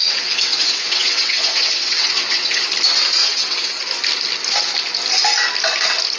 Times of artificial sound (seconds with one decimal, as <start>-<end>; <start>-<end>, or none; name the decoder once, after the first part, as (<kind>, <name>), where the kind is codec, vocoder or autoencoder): 0.0-2.7 (vocoder, WaveNeXt); 3.2-3.8